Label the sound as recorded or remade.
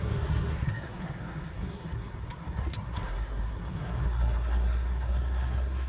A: remade